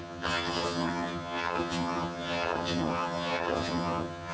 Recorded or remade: remade